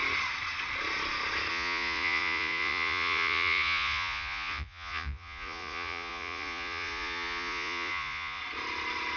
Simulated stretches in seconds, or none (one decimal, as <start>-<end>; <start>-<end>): 1.5-8.4